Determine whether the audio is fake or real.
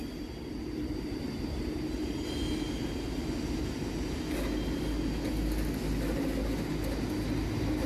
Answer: real